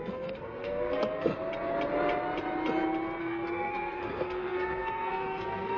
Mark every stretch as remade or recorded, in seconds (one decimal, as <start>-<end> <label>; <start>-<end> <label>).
0.0-1.3 remade; 1.3-3.2 recorded; 3.2-5.8 remade